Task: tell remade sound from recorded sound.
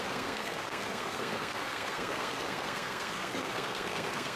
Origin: remade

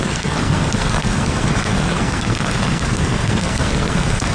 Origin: remade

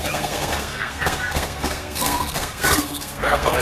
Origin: remade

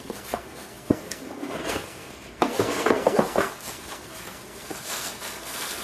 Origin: remade